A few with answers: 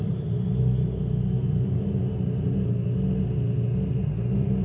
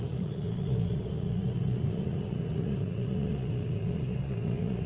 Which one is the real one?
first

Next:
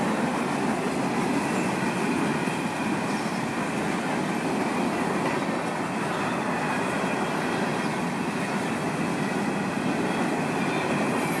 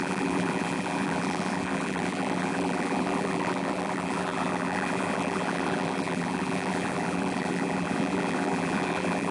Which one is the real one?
first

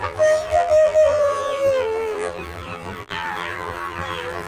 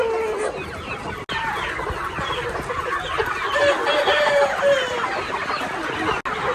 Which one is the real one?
second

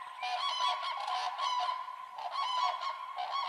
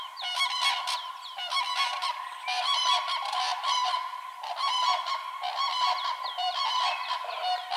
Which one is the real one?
first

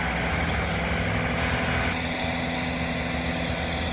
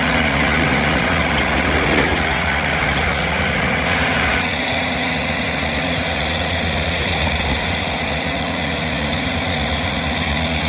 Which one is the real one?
first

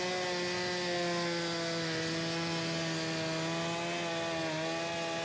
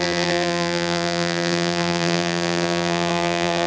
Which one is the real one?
first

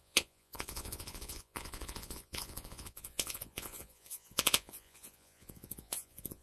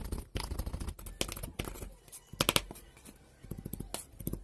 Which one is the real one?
second